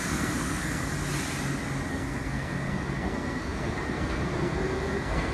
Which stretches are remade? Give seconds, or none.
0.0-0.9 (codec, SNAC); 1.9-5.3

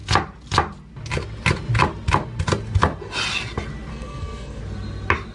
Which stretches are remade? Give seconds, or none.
3.9-4.6 (codec, SNAC)

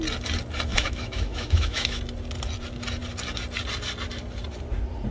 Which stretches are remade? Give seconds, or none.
0.7-2.0 (autoencoder, DAC-VAE)